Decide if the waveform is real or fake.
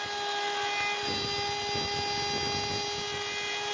real